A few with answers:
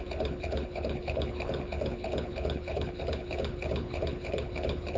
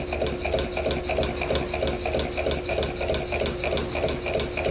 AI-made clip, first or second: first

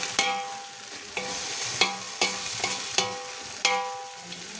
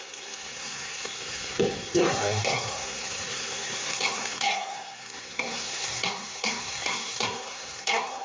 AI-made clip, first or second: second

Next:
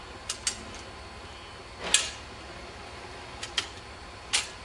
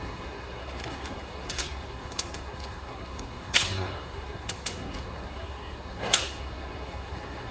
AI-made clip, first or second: second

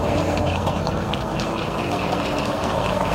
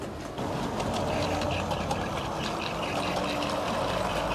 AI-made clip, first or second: first